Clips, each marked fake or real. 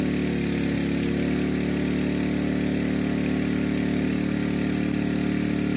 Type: real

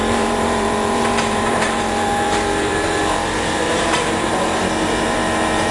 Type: fake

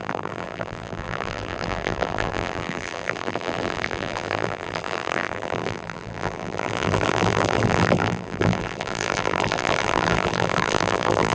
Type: fake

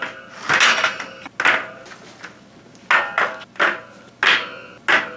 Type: real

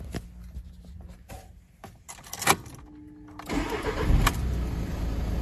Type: real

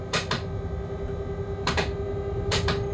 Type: real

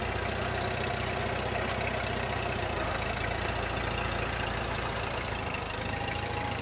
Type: fake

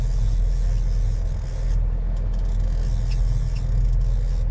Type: real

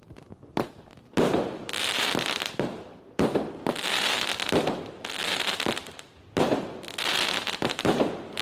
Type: fake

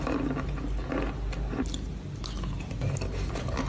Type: real